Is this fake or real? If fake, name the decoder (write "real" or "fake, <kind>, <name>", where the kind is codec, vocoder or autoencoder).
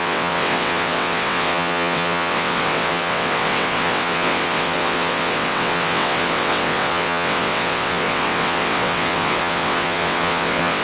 fake, vocoder, WaveNeXt